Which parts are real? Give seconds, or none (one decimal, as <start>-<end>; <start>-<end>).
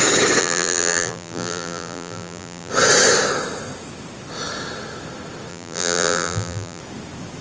0.0-0.4; 2.7-5.5; 6.8-7.4